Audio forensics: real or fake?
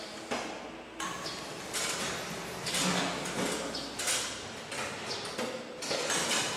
real